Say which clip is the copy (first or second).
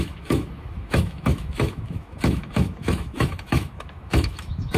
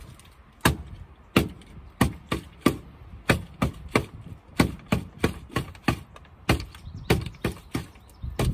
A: first